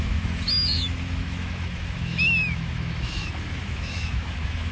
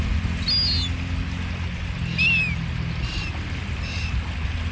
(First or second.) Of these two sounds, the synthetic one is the first